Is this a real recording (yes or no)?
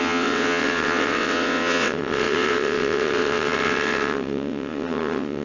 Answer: no